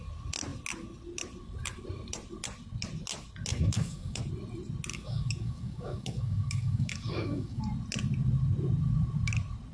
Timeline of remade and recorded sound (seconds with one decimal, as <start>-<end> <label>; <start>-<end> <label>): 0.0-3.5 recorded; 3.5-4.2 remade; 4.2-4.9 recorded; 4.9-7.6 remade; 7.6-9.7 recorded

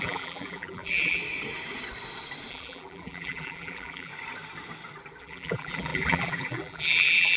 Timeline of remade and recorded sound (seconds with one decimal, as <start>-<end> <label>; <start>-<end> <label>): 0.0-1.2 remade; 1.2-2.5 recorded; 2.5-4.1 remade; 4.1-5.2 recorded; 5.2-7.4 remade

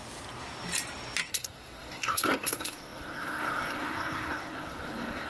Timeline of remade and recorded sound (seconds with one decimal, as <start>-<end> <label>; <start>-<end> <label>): 0.0-1.3 recorded; 1.3-5.3 remade